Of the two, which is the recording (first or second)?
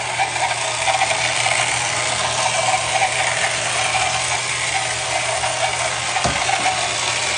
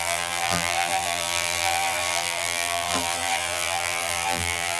first